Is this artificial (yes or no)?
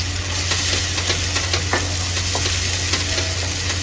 no